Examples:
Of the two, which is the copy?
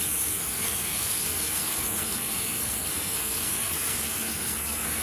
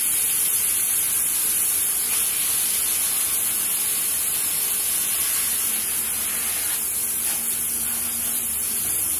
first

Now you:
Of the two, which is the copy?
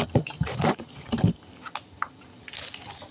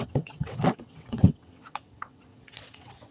second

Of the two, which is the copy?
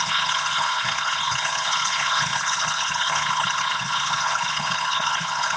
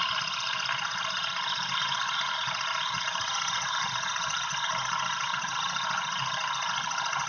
first